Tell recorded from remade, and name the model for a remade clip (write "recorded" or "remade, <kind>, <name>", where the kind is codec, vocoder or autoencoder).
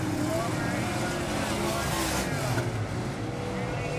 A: recorded